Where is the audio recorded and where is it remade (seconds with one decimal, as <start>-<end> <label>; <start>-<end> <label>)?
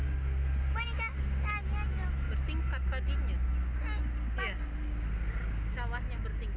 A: 0.0-6.6 recorded